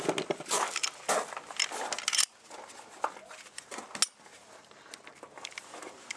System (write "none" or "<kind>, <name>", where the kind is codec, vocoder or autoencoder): none